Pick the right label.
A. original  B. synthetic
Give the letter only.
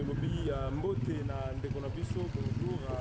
A